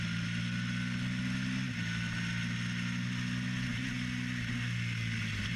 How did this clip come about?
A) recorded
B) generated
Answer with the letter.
A